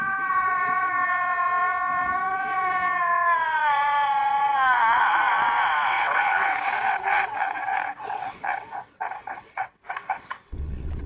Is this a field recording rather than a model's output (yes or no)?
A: no